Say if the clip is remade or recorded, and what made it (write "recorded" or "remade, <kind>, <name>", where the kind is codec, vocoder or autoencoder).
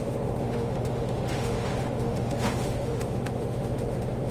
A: remade, autoencoder, DAC-VAE